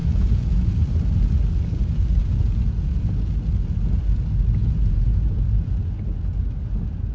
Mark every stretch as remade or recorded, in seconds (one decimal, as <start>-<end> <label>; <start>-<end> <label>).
0.0-0.7 remade; 0.7-2.2 recorded; 2.2-3.3 remade; 3.3-4.6 recorded; 4.6-5.8 remade; 5.8-7.1 recorded